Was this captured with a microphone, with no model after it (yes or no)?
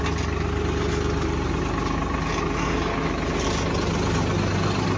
yes